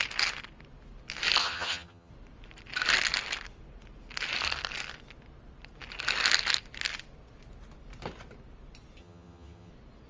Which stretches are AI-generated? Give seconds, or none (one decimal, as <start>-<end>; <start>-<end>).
1.4-2.1; 9.0-9.7